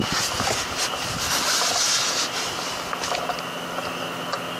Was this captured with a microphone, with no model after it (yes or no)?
yes